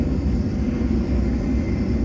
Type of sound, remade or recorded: recorded